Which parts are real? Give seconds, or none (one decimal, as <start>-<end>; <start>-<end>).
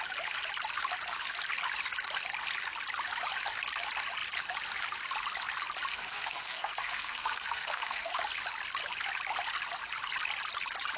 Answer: 0.0-5.9; 8.2-11.0